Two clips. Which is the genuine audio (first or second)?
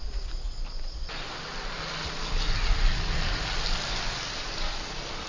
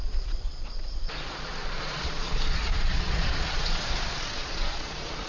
first